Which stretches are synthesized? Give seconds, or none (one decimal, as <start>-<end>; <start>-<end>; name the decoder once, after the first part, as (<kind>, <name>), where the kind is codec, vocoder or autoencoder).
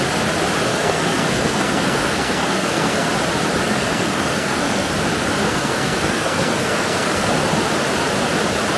0.7-3.1 (codec, SNAC); 3.6-4.9; 5.4-7.3